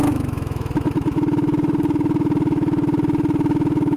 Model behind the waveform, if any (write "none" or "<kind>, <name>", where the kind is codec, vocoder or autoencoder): autoencoder, DAC-VAE